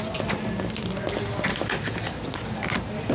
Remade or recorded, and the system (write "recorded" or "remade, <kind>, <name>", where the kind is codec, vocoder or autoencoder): recorded